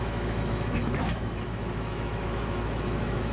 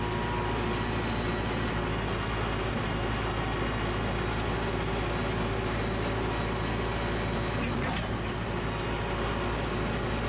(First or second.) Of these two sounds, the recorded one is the second